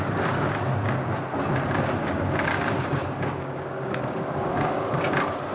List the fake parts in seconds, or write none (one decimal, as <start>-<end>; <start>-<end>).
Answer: 2.0-4.9